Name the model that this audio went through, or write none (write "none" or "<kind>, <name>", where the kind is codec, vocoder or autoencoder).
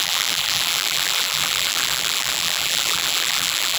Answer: vocoder, BigVGAN v2